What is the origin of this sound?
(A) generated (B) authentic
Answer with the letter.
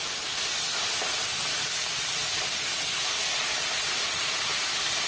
B